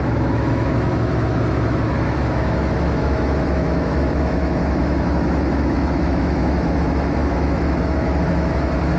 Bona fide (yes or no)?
no